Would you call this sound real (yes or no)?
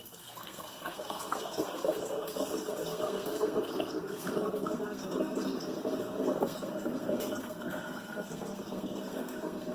no